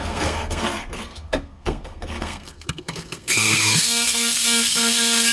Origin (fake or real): fake